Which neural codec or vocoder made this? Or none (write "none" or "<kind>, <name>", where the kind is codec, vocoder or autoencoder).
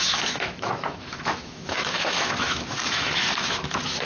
autoencoder, DAC-VAE